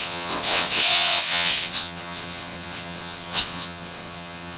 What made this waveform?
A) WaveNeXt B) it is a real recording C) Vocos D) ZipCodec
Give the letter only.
A